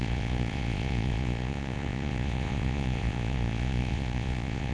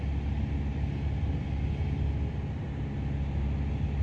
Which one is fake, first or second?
first